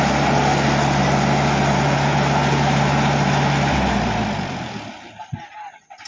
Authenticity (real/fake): real